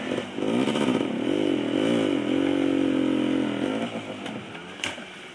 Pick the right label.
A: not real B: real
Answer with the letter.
B